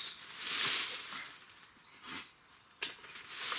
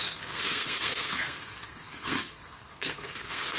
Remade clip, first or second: second